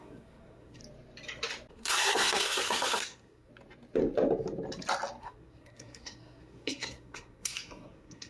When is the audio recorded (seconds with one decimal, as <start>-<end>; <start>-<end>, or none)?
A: 0.8-1.7; 3.5-5.2